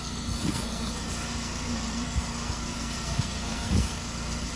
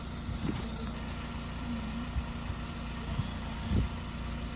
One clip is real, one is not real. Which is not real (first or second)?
first